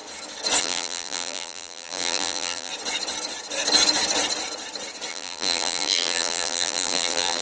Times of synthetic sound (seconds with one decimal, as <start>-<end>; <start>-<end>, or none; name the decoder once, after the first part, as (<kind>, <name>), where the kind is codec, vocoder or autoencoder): 0.6-2.7 (vocoder, BigVGAN v2); 5.1-7.4

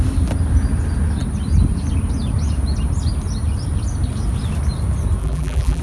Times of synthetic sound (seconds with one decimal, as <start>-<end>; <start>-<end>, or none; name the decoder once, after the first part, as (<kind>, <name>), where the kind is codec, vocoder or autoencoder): 5.2-5.8 (vocoder, BigVGAN v2)